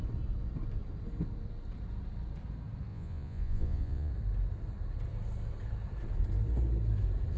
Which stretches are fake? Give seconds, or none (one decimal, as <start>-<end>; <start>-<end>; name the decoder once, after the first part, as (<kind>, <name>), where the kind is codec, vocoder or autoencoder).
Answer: 2.9-4.1 (vocoder, Vocos)